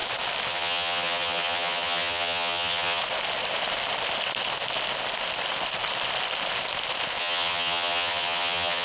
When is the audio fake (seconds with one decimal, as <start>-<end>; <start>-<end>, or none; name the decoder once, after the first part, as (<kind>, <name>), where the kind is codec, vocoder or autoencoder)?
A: 0.5-3.0 (vocoder, HiFi-GAN); 7.2-8.8